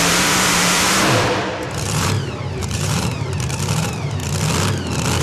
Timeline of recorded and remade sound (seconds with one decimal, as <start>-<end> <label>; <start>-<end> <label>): 0.0-4.2 remade; 4.2-5.2 recorded